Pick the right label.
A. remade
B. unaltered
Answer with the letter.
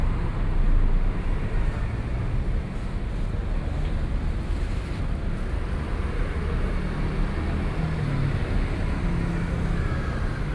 B